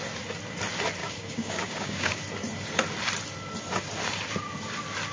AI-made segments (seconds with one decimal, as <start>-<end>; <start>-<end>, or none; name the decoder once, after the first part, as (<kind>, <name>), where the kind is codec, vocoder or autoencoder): 1.0-2.2 (codec, DAC)